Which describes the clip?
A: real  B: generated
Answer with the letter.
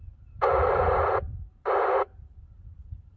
B